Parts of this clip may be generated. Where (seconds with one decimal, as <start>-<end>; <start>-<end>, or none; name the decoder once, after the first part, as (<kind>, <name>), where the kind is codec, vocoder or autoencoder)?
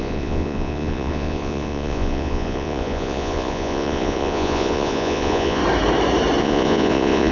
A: 0.0-5.6 (vocoder, Vocos); 6.4-7.3